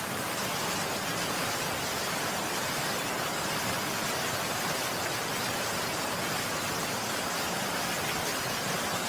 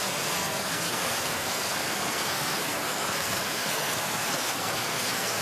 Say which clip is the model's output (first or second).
second